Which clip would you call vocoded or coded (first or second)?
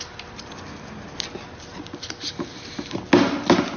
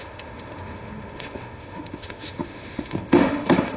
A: second